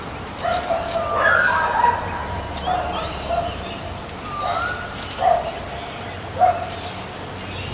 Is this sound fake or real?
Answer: real